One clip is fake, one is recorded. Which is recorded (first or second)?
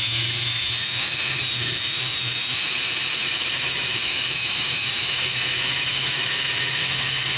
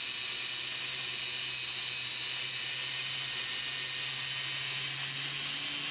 second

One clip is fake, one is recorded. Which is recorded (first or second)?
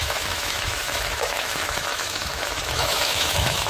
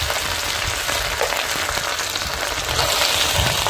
second